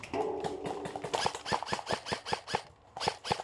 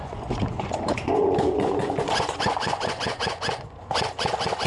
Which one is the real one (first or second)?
first